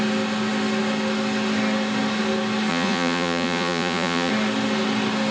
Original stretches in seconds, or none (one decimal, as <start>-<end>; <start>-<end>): 0.0-2.7; 4.3-5.3

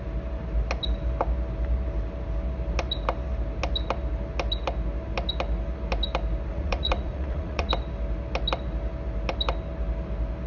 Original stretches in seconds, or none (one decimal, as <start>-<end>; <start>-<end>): 0.0-6.5; 7.7-10.5

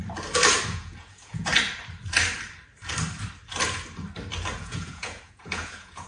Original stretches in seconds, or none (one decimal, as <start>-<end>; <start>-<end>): 0.0-0.7; 1.5-4.6

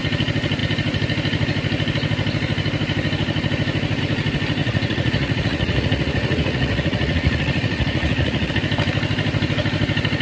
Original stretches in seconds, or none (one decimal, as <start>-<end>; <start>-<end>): 0.0-4.6; 8.5-10.2

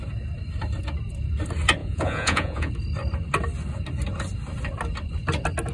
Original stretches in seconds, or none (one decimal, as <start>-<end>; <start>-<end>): 0.0-1.8; 2.7-5.7

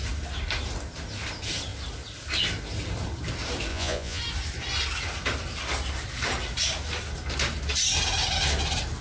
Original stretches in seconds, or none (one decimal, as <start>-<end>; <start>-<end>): 0.0-3.7; 4.2-9.0